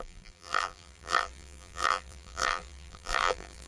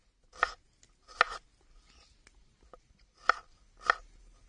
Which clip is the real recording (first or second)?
second